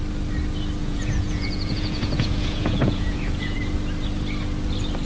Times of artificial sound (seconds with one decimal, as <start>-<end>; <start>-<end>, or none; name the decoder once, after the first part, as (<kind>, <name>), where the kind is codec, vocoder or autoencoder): 0.8-3.6 (vocoder, Vocos)